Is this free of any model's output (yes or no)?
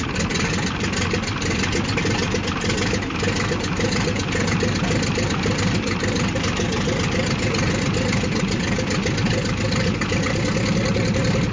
yes